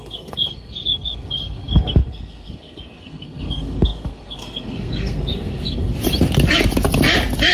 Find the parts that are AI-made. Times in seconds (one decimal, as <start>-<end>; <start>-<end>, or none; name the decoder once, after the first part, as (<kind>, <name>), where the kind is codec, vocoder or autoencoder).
0.0-5.9 (codec, SNAC)